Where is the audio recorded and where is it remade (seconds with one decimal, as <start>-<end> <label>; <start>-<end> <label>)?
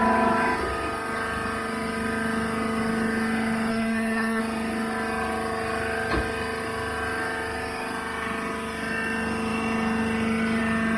0.0-3.7 recorded; 3.7-4.4 remade; 4.4-11.0 recorded